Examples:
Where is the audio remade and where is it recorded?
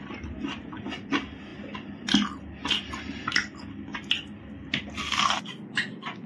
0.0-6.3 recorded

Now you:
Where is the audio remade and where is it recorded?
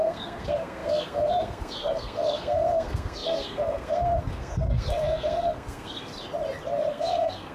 0.0-6.1 remade; 6.1-6.9 recorded; 6.9-7.5 remade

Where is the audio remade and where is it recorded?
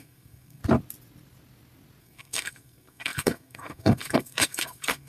0.0-0.6 remade; 0.6-2.0 recorded; 2.0-5.1 remade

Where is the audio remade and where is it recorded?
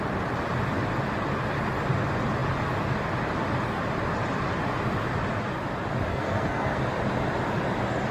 0.0-6.1 recorded; 6.1-6.8 remade; 6.8-8.1 recorded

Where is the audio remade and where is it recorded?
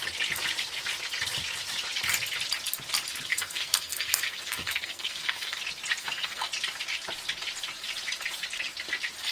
0.0-3.3 recorded; 3.3-5.6 remade; 5.6-6.0 recorded; 6.0-6.5 remade; 6.5-9.3 recorded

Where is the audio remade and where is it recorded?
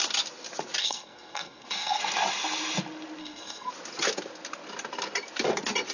0.0-0.8 recorded; 0.8-2.0 remade; 2.0-3.2 recorded; 3.2-3.7 remade; 3.7-5.9 recorded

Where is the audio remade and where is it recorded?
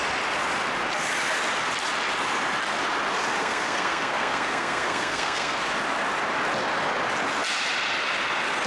0.0-3.4 recorded; 3.4-5.6 remade; 5.6-8.7 recorded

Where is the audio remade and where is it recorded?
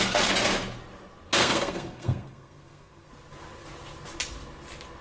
0.0-1.4 recorded; 1.4-3.1 remade; 3.1-5.0 recorded